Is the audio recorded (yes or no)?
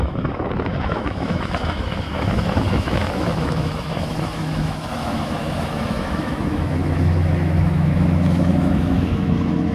no